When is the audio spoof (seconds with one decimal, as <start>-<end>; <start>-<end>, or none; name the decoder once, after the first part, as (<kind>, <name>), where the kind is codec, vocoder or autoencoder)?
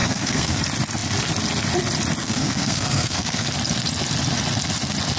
0.0-0.6 (codec, SNAC); 2.2-3.5